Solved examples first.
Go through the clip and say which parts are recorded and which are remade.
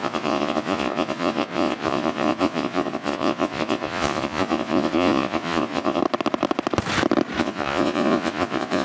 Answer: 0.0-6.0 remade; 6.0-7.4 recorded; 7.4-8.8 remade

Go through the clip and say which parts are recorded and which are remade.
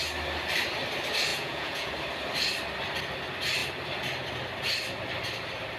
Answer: 0.0-1.3 recorded; 1.3-1.9 remade; 1.9-5.8 recorded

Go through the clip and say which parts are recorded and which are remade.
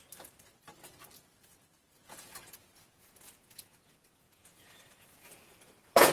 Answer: 0.0-2.0 recorded; 2.0-6.1 remade